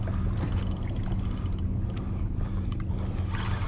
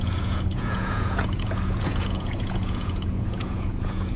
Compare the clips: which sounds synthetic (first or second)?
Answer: second